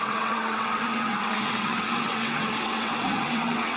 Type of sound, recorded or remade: remade